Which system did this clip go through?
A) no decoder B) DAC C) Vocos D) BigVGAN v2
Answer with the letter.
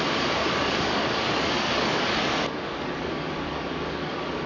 B